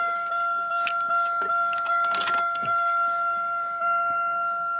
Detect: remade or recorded remade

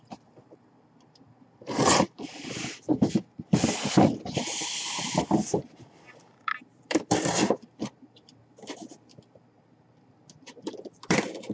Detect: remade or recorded remade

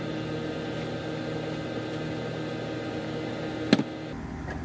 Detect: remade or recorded recorded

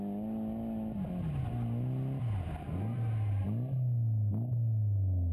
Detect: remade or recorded recorded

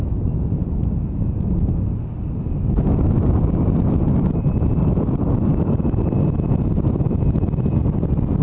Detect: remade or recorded recorded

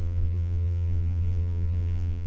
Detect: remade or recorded remade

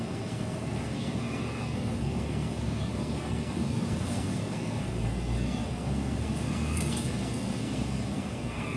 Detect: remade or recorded remade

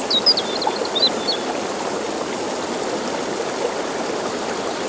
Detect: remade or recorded recorded